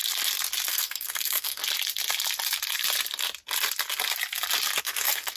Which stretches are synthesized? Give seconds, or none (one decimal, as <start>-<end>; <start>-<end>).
0.7-1.6; 4.8-5.4